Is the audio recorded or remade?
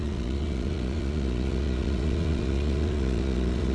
remade